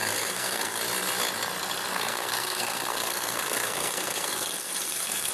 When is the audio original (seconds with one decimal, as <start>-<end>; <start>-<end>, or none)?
0.8-1.9

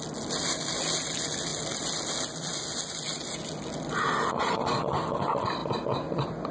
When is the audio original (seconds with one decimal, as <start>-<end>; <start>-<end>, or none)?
0.0-6.5